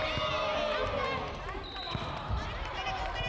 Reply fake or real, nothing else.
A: real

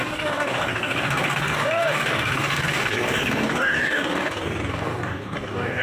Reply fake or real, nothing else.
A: fake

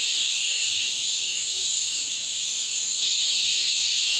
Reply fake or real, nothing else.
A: fake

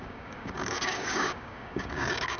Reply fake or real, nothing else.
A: fake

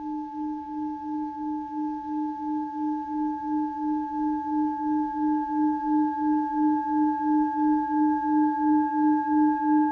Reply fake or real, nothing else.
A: fake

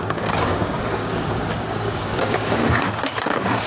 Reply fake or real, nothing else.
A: fake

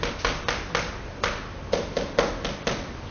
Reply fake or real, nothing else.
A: real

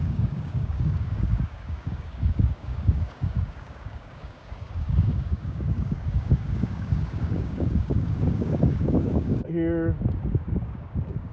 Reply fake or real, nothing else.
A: fake